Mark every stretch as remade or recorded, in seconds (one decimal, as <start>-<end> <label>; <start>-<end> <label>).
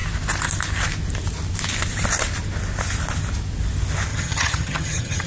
0.0-4.1 recorded; 4.1-5.3 remade